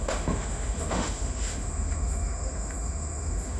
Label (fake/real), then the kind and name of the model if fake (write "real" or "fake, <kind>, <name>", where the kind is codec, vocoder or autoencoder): fake, autoencoder, DAC-VAE